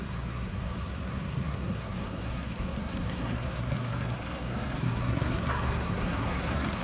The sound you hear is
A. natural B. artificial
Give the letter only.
B